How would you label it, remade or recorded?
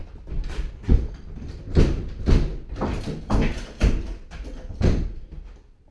recorded